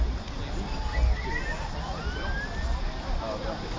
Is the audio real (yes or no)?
yes